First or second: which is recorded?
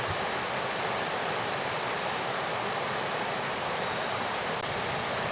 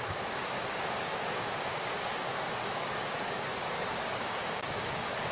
first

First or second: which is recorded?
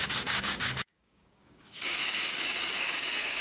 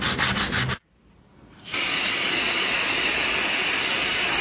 second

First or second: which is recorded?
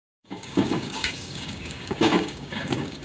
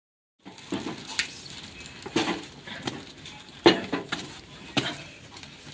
second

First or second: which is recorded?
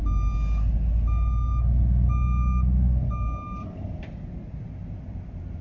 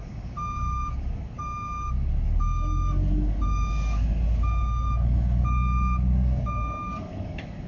first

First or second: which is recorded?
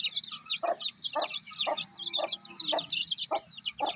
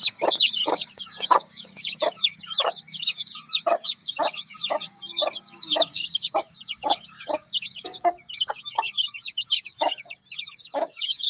first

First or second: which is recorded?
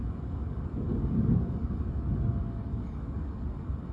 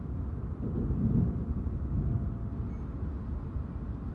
second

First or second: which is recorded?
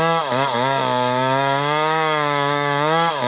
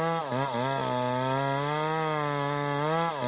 second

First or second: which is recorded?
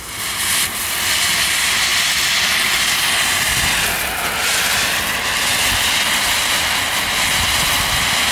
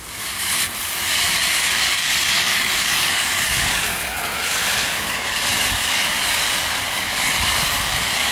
first